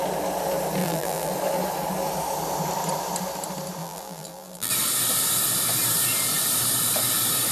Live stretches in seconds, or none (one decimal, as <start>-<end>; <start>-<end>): 0.0-0.8; 1.3-3.8; 4.7-7.5